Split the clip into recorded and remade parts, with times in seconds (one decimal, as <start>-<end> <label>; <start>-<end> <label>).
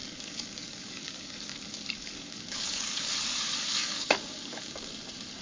0.0-3.1 remade; 3.1-3.7 recorded; 3.7-4.9 remade; 4.9-5.4 recorded